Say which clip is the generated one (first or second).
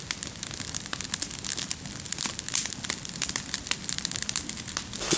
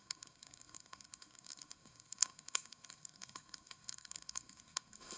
second